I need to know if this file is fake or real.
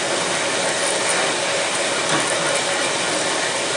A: real